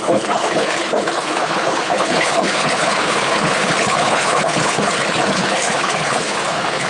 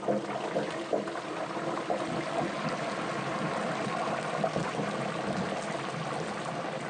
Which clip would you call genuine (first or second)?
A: second